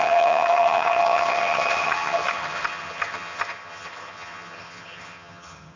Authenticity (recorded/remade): remade